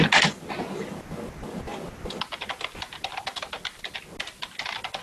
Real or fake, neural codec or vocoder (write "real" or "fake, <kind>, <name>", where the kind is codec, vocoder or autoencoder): real